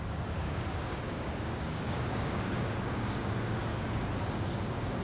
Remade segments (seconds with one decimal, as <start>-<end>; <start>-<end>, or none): 0.0-3.7; 4.3-5.0